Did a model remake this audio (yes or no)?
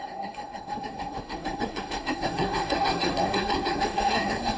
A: yes